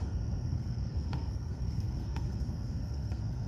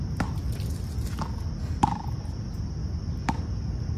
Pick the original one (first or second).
second